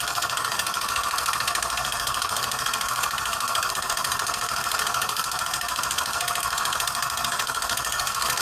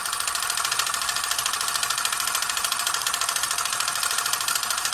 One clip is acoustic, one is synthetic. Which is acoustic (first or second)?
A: second